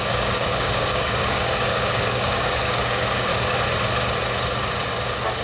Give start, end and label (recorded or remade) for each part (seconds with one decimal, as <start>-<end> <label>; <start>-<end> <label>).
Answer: 0.0-3.3 remade; 3.3-5.4 recorded